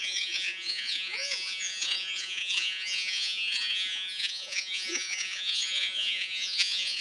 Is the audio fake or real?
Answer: fake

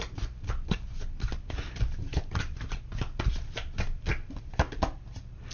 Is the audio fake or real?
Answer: real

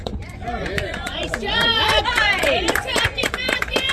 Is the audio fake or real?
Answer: fake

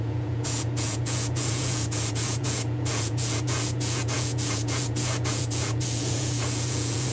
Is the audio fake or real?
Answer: fake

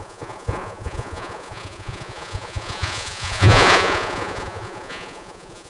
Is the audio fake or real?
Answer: fake